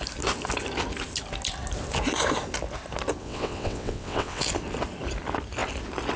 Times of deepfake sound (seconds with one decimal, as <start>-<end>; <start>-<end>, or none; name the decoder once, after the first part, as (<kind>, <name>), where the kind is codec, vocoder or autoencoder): 3.2-4.4 (vocoder, WaveNeXt)